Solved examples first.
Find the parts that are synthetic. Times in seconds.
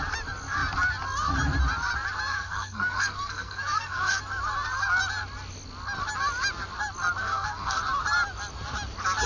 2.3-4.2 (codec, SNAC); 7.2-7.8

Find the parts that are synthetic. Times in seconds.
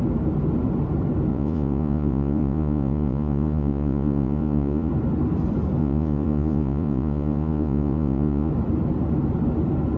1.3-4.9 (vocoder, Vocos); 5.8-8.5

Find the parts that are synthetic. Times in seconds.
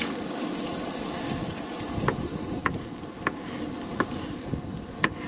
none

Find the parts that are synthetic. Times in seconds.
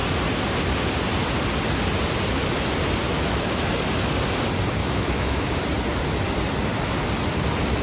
4.8-5.5 (autoencoder, DAC-VAE)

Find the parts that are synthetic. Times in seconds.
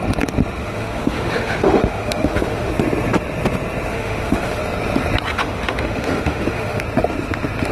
0.6-2.7 (autoencoder, DAC-VAE); 3.9-4.6; 5.3-6.8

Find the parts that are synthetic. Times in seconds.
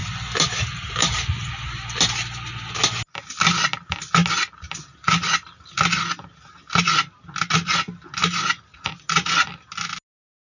8.7-9.5 (vocoder, Vocos)